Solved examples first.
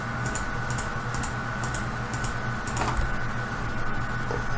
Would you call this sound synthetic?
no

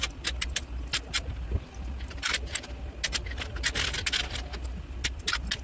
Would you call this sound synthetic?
no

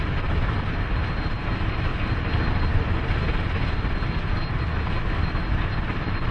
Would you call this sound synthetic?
no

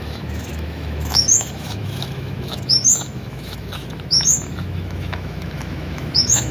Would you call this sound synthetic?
yes